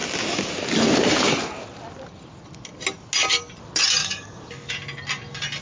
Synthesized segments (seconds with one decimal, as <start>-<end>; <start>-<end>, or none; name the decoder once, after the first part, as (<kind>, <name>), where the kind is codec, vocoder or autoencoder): 4.0-4.7 (codec, DAC)